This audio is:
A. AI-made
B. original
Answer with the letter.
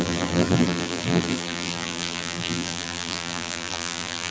A